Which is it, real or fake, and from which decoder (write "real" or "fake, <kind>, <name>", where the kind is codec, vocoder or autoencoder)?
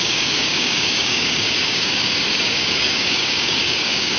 fake, codec, DAC